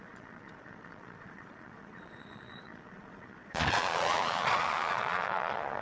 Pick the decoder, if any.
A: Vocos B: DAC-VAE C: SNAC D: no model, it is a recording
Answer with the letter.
A